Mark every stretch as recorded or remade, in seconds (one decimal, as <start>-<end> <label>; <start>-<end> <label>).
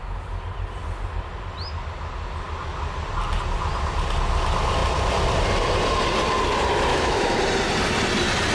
0.0-6.9 recorded; 6.9-7.4 remade; 7.4-8.5 recorded